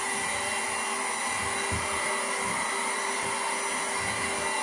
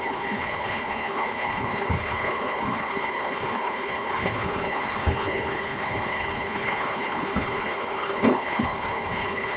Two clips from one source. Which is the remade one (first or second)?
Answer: second